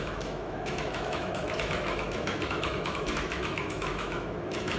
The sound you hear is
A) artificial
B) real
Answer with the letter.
A